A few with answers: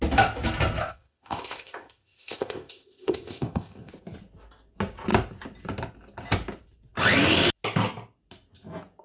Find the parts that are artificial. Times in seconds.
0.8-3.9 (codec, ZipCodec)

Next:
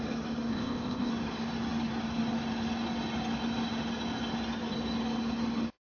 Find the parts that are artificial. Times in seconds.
0.5-1.1 (codec, ZipCodec)

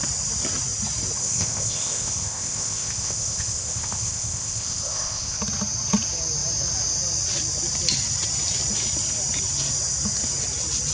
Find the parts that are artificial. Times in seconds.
1.2-5.4 (codec, ZipCodec)

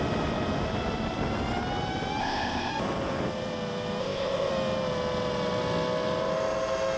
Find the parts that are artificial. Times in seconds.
2.2-2.7 (codec, ZipCodec); 4.0-4.5